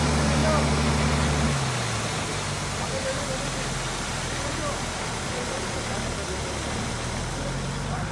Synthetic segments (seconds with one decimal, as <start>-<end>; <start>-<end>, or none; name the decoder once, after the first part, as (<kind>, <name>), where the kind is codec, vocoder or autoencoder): none